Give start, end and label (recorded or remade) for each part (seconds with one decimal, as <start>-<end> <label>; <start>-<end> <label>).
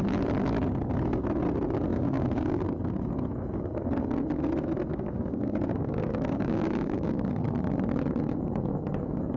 0.0-1.9 recorded; 1.9-2.6 remade; 2.6-4.9 recorded; 4.9-7.3 remade; 7.3-9.4 recorded